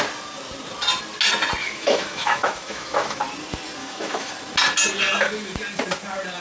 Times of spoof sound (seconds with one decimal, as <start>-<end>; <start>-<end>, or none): 1.6-3.2; 3.8-4.3